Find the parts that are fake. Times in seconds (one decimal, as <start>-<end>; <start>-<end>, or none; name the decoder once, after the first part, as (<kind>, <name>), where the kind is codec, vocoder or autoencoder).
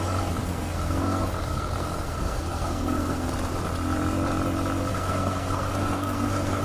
0.4-3.3 (codec, SNAC); 4.9-6.6